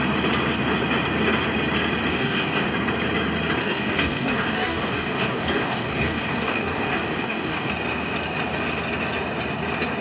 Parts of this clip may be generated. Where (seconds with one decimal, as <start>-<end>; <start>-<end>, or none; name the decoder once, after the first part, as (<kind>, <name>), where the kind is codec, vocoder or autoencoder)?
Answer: 2.1-2.7 (codec, DAC); 3.6-7.7